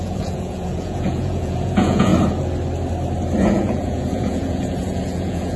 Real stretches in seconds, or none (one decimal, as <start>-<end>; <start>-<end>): 2.1-3.4